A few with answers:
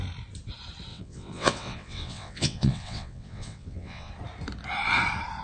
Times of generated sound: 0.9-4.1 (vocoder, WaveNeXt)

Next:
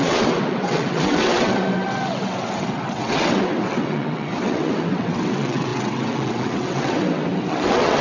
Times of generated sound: 0.0-8.0 (vocoder, WaveNeXt)

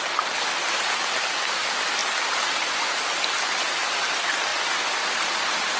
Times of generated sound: none

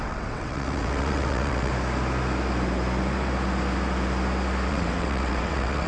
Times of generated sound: 0.0-1.7 (vocoder, WaveNeXt); 4.7-5.9

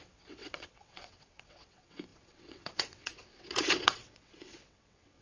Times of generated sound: 0.0-5.2 (vocoder, WaveNeXt)

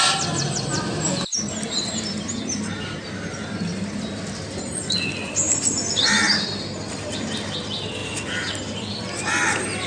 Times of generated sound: none

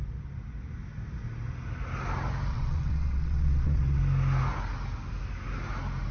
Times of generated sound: 2.5-4.0 (vocoder, WaveNeXt)

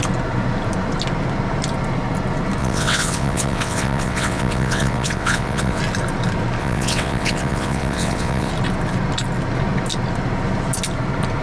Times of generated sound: 2.6-5.8 (vocoder, WaveNeXt); 6.6-8.5